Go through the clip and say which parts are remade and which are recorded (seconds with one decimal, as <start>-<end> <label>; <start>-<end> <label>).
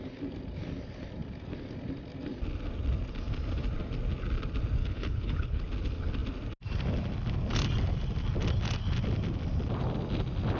0.0-4.8 recorded; 4.8-5.6 remade; 5.6-10.6 recorded